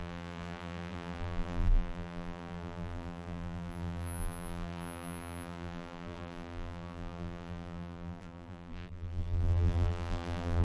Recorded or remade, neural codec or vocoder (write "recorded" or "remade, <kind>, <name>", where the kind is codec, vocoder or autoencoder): remade, vocoder, BigVGAN v2